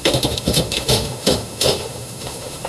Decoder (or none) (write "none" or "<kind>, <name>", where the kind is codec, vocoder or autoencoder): autoencoder, DAC-VAE